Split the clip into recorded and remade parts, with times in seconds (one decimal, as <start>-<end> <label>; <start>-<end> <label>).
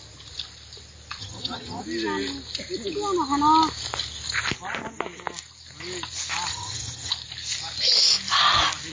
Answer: 0.0-1.2 recorded; 1.2-1.8 remade; 1.8-6.5 recorded; 6.5-7.1 remade; 7.1-8.9 recorded